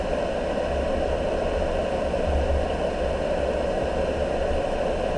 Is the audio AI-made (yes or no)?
no